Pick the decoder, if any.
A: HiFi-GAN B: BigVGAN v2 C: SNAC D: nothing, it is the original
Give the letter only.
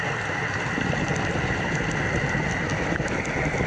D